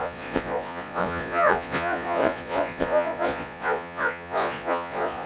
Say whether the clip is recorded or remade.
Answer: remade